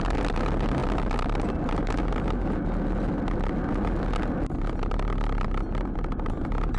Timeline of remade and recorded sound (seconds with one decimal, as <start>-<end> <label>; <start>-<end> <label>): 0.0-0.8 remade; 0.8-4.9 recorded; 4.9-6.8 remade